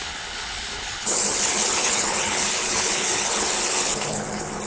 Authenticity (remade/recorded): remade